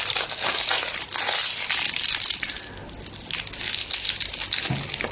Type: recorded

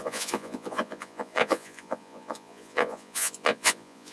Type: remade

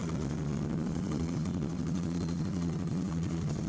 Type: remade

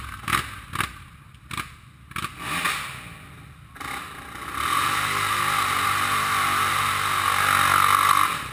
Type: recorded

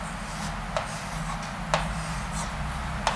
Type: recorded